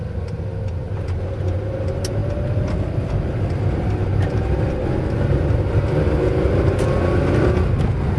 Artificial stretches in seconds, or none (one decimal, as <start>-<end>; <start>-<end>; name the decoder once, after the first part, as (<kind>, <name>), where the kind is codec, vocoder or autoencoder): none